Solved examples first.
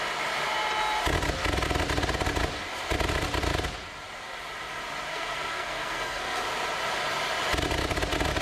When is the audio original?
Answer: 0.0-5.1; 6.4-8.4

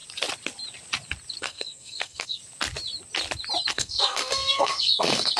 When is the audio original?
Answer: 0.0-1.4; 2.4-3.7

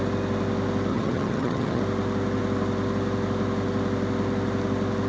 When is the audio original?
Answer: 0.0-0.9; 1.8-5.1

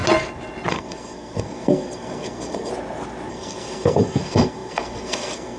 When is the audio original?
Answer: 0.0-0.7; 2.7-3.3

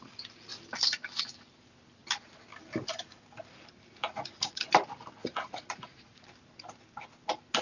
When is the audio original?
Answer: 0.0-4.0; 4.6-5.2; 6.2-7.6

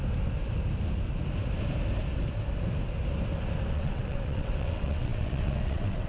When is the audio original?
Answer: 0.0-3.7

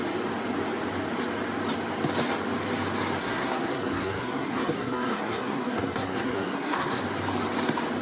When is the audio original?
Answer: 0.0-3.2; 7.0-8.0